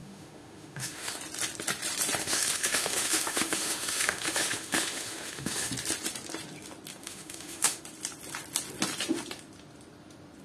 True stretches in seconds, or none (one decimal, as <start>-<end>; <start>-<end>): 1.2-2.2; 5.7-7.0; 7.8-10.4